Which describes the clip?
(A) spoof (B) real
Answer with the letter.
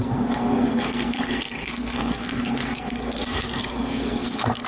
A